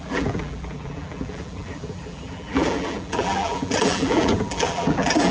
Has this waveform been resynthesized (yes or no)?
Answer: yes